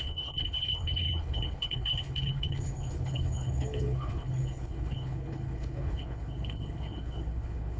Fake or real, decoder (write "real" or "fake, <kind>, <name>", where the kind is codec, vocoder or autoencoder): fake, codec, HILCodec